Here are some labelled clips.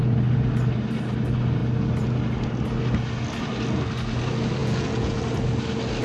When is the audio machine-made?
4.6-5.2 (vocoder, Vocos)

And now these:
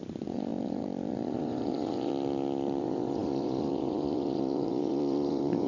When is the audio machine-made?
0.0-2.1 (vocoder, Vocos); 2.8-5.7

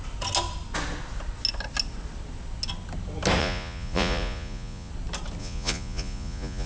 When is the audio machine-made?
3.4-4.9 (vocoder, Vocos); 5.4-6.7